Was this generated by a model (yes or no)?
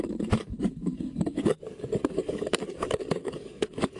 yes